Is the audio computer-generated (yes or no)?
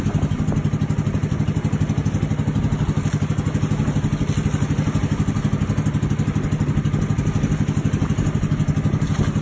no